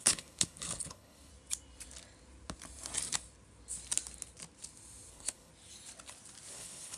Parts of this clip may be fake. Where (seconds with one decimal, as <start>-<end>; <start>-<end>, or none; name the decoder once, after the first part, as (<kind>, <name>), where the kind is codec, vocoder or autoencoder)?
0.0-1.3 (codec, HILCodec); 5.1-5.5; 6.5-7.0